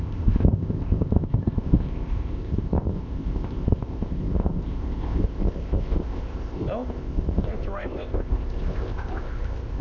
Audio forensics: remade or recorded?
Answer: remade